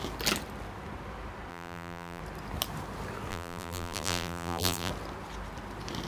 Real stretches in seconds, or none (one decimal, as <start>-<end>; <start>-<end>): 0.0-1.5; 2.2-3.3; 4.9-6.1